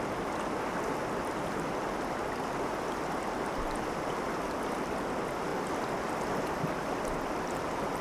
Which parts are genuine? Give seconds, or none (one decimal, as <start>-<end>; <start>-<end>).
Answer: 0.0-8.0